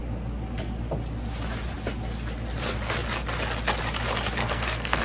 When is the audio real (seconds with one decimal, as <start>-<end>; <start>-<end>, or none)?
0.0-4.4